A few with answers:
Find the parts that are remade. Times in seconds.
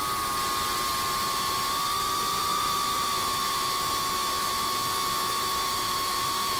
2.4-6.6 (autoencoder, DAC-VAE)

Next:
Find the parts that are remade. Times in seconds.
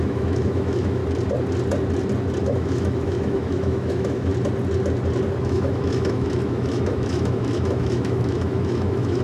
0.0-1.0 (autoencoder, DAC-VAE); 2.4-4.3; 5.4-9.2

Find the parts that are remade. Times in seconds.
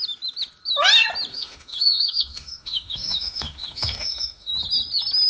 1.3-4.5 (autoencoder, DAC-VAE)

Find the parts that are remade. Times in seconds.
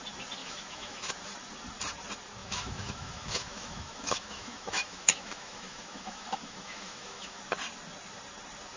0.4-1.1 (autoencoder, DAC-VAE); 2.4-7.4